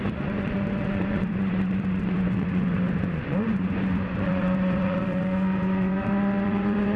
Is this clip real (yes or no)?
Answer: no